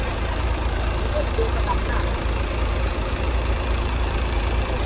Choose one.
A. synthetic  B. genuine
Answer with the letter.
A